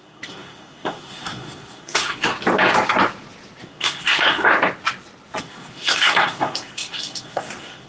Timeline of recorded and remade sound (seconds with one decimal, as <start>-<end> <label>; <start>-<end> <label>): 0.0-2.3 remade; 2.3-3.6 recorded; 3.6-4.5 remade; 4.5-5.4 recorded; 5.4-7.9 remade